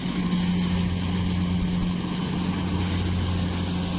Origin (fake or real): real